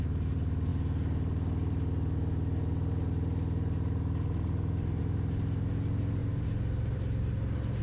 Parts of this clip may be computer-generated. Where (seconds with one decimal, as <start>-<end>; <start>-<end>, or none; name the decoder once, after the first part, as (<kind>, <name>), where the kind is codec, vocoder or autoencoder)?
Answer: 6.2-7.8 (vocoder, BigVGAN v2)